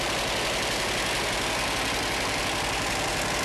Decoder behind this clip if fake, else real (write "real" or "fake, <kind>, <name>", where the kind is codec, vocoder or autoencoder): real